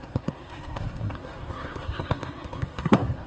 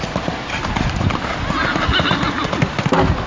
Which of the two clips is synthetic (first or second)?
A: first